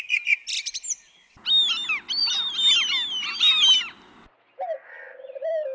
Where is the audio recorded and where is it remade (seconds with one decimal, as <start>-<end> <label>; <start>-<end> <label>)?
0.0-5.7 recorded